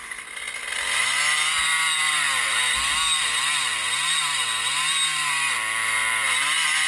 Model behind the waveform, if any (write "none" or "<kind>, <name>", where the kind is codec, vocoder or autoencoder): none